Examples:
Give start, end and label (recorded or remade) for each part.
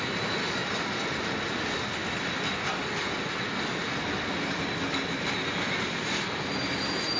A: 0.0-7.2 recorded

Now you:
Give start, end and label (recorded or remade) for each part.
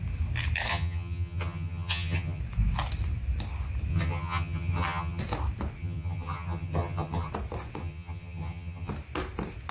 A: 0.0-0.7 recorded; 0.7-2.4 remade; 2.4-3.9 recorded; 3.9-5.2 remade; 5.2-5.8 recorded; 5.8-7.3 remade; 7.3-7.8 recorded; 7.8-8.9 remade; 8.9-9.7 recorded